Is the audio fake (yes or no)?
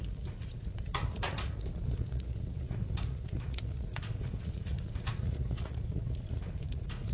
yes